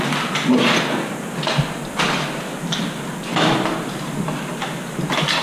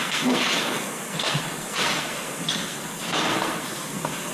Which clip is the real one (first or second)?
first